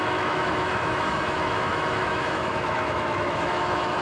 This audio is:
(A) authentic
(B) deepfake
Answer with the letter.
B